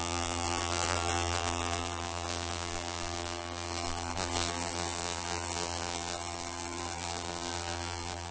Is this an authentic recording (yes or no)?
no